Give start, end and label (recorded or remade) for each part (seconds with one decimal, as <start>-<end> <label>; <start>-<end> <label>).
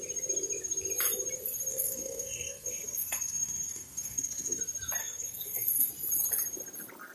0.0-1.7 recorded; 1.7-4.6 remade; 4.6-5.0 recorded; 5.0-5.9 remade; 5.9-7.1 recorded